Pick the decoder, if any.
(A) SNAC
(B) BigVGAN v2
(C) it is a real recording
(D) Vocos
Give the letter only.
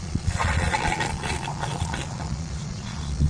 D